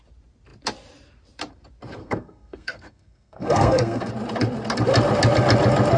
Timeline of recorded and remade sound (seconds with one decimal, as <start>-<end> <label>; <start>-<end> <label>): 0.0-2.0 recorded; 2.0-4.1 remade; 4.1-6.0 recorded